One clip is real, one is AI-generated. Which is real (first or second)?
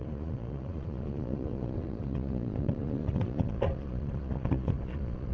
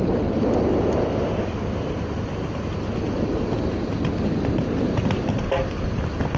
second